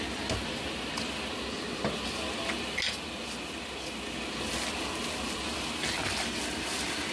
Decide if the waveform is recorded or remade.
recorded